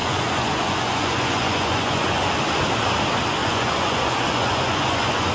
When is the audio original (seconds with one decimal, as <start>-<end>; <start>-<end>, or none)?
2.3-3.4